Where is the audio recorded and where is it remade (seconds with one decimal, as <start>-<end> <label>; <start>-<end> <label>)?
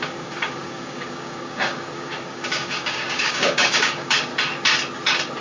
0.0-4.3 remade; 4.3-5.4 recorded